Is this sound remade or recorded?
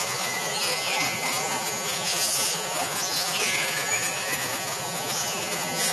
remade